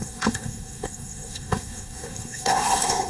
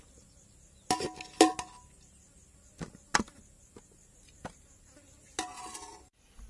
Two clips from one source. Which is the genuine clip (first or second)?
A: second